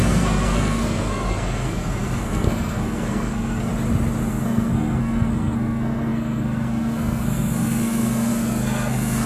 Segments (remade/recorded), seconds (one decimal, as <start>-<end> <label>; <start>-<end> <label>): 0.0-3.7 remade; 3.7-4.3 recorded; 4.3-9.3 remade